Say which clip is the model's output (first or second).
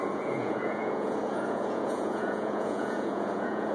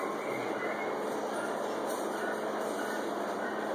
first